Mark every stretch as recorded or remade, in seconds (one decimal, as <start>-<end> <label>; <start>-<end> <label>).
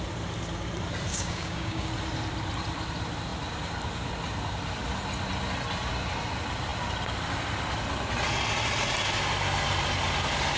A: 0.0-1.1 recorded; 1.1-1.9 remade; 1.9-10.6 recorded